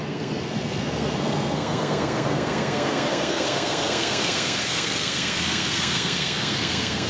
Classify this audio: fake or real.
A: fake